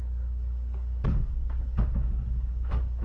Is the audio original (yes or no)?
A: no